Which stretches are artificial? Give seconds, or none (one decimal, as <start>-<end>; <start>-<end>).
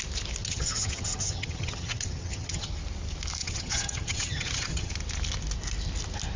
0.4-2.7; 3.4-4.9